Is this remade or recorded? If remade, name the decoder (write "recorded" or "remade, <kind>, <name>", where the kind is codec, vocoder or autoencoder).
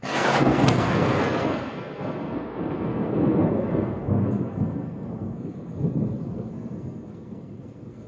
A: remade, codec, SNAC